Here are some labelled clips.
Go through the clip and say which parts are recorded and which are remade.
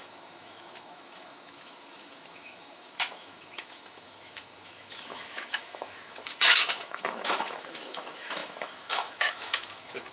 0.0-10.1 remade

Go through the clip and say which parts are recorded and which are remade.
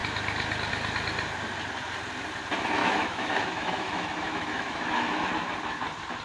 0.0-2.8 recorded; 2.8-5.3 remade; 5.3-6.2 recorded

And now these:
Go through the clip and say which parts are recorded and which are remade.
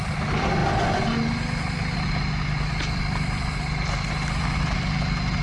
0.0-5.4 recorded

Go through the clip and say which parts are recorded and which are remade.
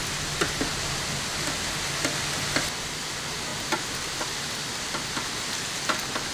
0.0-6.3 recorded